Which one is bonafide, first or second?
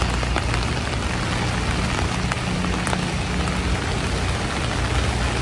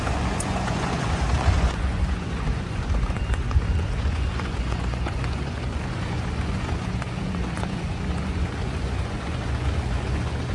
first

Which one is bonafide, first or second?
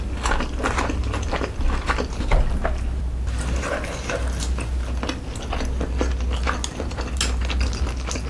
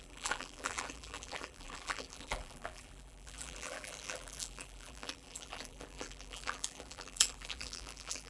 first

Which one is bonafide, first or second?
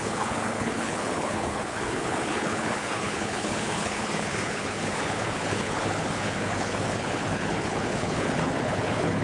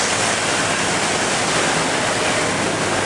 second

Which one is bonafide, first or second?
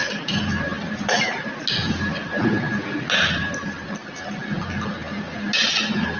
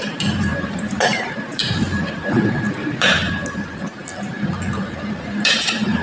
first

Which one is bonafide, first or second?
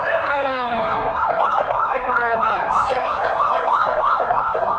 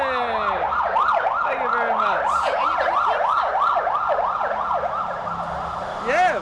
second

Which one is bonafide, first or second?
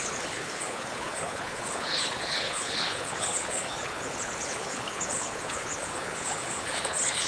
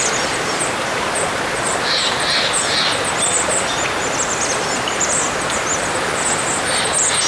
second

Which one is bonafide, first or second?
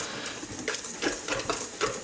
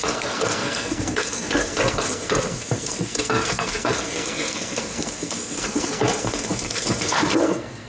first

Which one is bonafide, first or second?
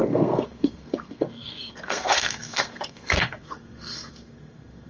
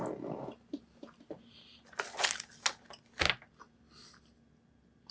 second